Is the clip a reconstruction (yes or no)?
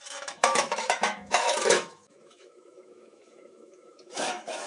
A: yes